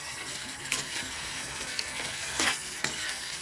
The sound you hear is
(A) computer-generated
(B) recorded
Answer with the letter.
A